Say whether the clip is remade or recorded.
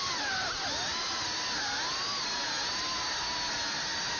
recorded